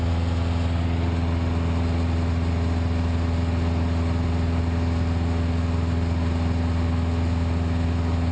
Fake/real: real